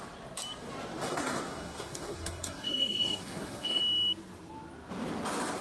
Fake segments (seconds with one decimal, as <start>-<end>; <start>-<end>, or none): 1.0-3.8